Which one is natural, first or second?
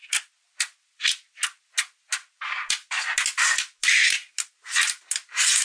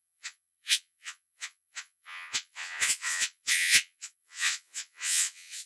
first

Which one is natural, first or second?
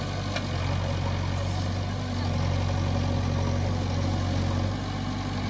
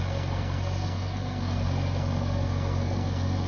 first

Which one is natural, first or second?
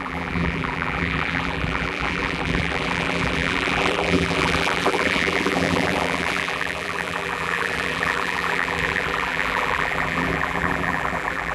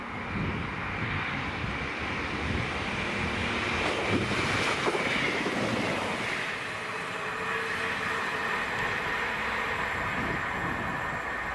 second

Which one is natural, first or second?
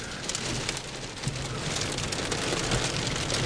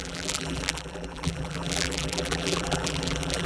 first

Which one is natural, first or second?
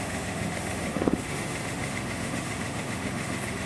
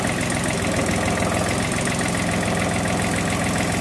second